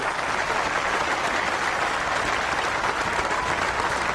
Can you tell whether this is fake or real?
real